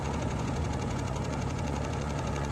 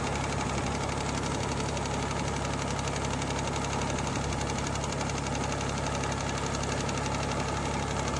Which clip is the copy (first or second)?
first